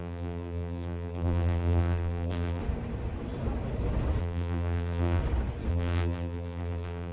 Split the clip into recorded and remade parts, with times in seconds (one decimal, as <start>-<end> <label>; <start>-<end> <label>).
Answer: 0.0-2.6 remade; 2.6-4.2 recorded; 4.2-5.2 remade; 5.2-5.7 recorded; 5.7-7.1 remade